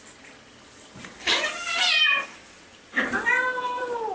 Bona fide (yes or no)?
yes